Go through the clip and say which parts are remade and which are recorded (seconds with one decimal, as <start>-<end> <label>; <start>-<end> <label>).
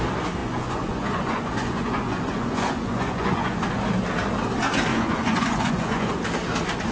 0.0-0.4 recorded; 0.4-3.6 remade; 3.6-4.9 recorded; 4.9-6.1 remade; 6.1-6.9 recorded